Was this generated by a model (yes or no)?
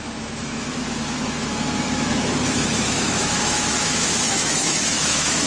yes